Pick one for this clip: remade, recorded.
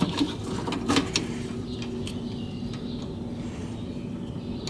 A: recorded